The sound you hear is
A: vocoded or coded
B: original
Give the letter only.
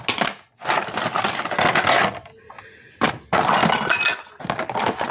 B